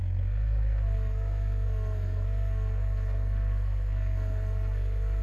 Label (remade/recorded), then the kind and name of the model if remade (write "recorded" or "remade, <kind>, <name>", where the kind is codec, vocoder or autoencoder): remade, codec, SNAC